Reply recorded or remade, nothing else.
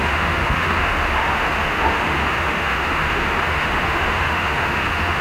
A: remade